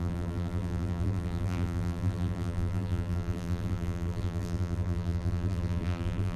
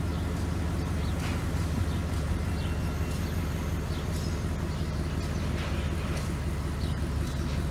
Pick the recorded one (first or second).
second